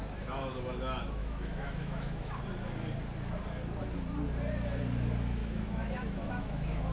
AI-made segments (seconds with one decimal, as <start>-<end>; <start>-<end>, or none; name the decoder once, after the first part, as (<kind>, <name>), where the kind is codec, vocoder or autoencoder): 1.2-2.4 (autoencoder, DAC-VAE); 5.4-6.9